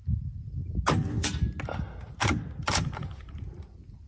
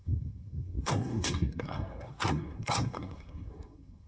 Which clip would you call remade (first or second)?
second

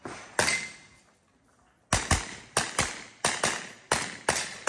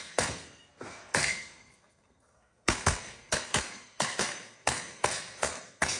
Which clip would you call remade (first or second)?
second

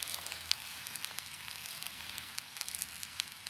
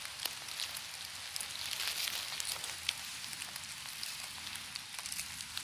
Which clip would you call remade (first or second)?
first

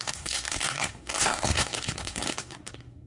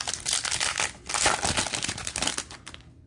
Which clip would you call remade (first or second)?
first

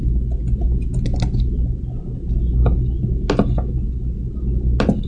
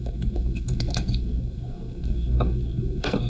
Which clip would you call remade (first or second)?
second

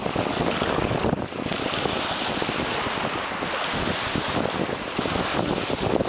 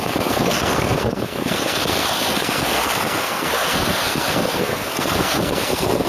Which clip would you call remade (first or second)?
second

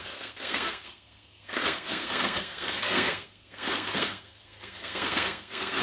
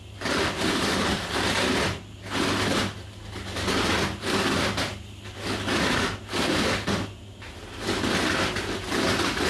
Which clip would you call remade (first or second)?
first